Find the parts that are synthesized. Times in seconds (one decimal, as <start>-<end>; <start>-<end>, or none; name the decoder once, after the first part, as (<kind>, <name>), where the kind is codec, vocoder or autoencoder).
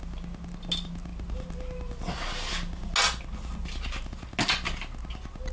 none